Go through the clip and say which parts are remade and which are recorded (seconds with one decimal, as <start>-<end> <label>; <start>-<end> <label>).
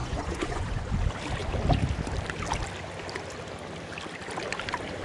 0.0-0.9 remade; 0.9-5.0 recorded